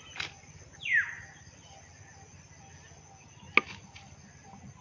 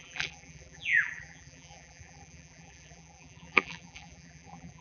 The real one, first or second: first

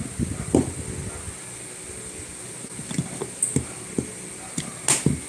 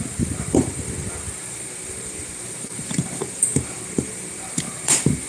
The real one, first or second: first